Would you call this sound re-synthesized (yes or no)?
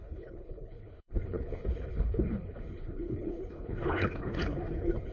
yes